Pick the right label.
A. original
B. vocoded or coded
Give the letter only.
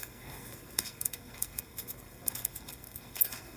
B